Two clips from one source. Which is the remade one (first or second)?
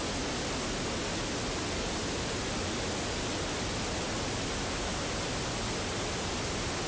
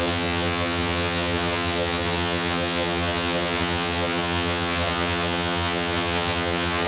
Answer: second